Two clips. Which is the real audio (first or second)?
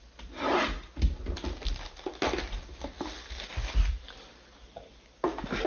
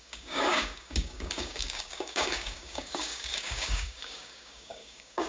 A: first